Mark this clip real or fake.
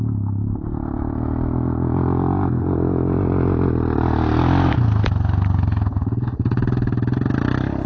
real